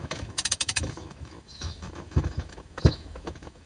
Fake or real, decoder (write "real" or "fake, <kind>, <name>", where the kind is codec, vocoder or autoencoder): fake, autoencoder, DAC-VAE